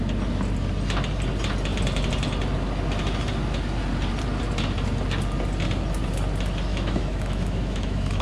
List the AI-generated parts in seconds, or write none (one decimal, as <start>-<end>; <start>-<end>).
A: 6.7-8.2